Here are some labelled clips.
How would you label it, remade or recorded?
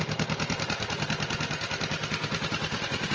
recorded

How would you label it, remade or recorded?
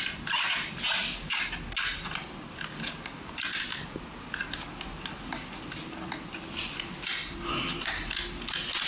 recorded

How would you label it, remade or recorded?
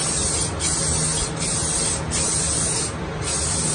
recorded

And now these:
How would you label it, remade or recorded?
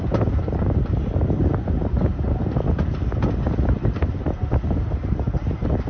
recorded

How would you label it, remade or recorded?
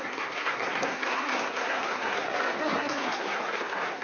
remade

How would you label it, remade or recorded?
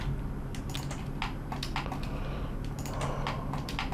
recorded